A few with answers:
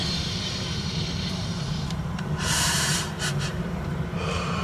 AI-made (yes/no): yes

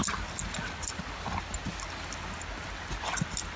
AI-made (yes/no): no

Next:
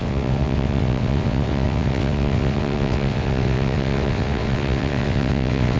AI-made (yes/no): yes